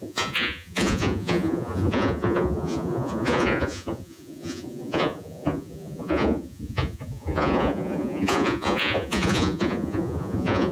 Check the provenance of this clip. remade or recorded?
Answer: remade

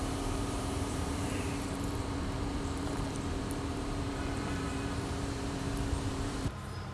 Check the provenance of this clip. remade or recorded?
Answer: remade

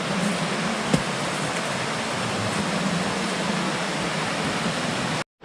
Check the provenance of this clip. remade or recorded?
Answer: recorded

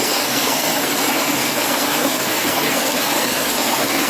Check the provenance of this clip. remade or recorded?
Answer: remade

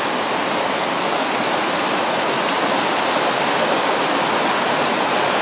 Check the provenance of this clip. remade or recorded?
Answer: recorded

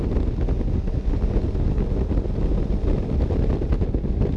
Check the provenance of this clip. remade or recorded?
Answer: recorded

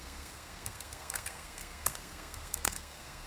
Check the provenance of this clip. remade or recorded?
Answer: remade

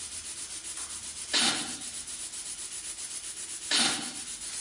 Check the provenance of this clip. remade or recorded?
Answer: recorded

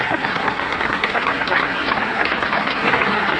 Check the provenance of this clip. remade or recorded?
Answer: remade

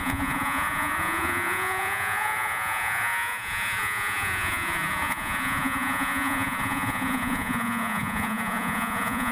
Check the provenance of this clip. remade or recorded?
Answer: remade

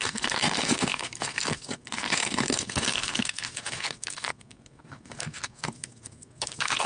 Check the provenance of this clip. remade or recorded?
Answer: remade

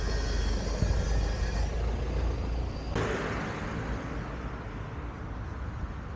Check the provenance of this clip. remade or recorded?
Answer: recorded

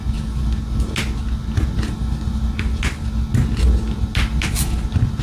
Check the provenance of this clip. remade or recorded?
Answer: recorded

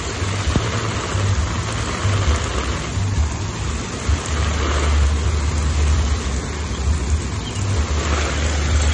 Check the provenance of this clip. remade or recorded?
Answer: recorded